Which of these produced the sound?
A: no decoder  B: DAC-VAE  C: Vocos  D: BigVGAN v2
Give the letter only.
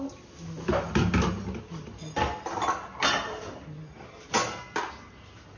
A